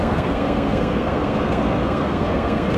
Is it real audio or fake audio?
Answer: fake